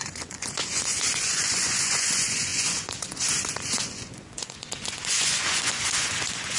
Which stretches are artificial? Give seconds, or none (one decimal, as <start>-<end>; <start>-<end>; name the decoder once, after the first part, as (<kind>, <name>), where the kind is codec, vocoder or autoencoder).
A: 0.0-6.6 (vocoder, Vocos)